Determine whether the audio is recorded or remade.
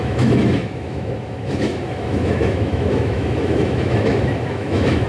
remade